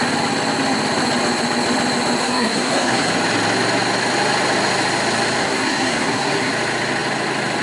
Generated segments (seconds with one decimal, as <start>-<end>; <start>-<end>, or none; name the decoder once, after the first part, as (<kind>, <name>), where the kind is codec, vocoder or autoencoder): 2.2-3.1 (codec, SNAC); 5.4-6.5